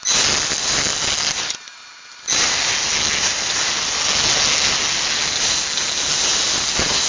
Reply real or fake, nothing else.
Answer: real